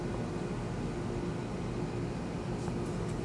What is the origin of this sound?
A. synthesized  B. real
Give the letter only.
B